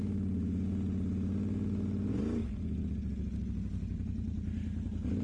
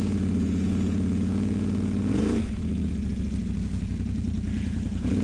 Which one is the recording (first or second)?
first